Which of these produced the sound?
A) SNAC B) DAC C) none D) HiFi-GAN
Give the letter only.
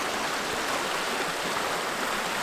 C